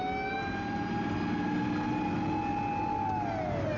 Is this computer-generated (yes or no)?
no